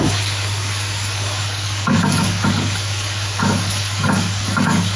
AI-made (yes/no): yes